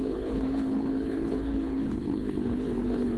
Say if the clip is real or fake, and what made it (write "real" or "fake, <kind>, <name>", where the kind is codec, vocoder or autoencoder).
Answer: fake, codec, HILCodec